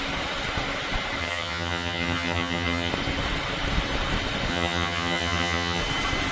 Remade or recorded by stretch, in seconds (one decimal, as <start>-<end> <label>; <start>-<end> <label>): 0.0-1.2 recorded; 1.2-2.9 remade; 2.9-4.5 recorded; 4.5-5.8 remade; 5.8-6.3 recorded